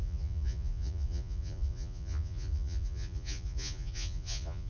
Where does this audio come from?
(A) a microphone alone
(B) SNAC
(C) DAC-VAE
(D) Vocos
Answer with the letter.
D